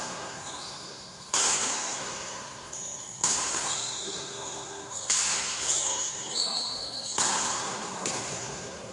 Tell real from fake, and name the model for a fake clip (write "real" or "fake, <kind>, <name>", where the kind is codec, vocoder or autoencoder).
fake, codec, SNAC